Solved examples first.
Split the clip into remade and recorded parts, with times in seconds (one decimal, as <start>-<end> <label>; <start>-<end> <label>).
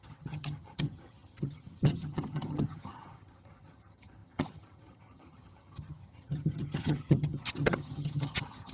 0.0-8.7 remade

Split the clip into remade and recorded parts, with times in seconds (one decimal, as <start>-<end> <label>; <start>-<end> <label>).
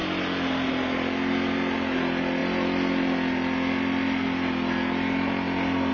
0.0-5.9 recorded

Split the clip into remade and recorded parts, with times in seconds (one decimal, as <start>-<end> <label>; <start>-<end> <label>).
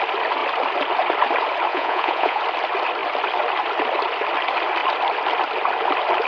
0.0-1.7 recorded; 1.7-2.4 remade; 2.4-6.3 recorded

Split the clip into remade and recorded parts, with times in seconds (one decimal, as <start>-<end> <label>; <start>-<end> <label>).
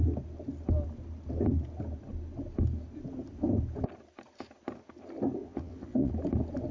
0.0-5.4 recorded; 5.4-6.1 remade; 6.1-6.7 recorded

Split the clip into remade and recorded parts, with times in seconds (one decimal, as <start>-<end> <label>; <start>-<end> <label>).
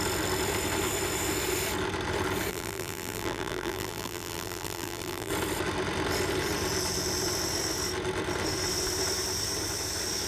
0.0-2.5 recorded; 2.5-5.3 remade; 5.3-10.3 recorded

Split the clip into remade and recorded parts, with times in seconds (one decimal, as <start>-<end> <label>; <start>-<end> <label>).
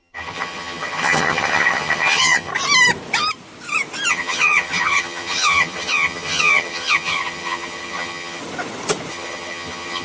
0.0-2.5 remade; 2.5-4.1 recorded; 4.1-8.4 remade; 8.4-9.1 recorded; 9.1-10.0 remade